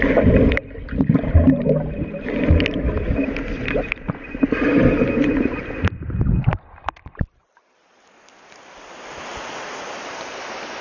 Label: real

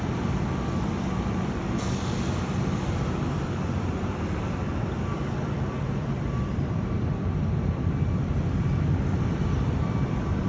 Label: fake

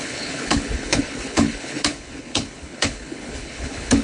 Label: fake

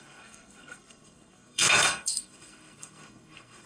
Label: fake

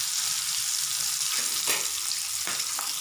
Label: real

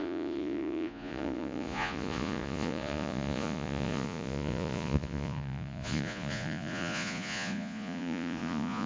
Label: fake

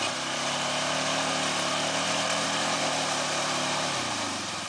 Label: fake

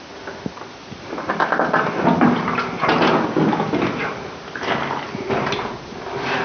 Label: real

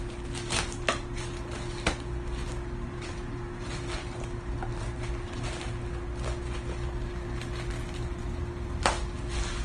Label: real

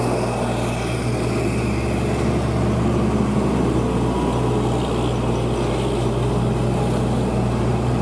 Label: real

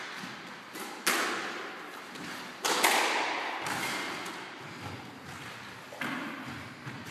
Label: real